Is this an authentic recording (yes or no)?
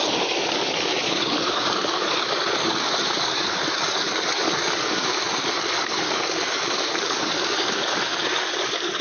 no